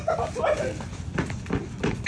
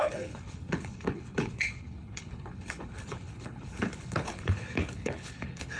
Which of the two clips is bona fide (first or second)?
first